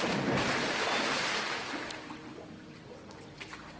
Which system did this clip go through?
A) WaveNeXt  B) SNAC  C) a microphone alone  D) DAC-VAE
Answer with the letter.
C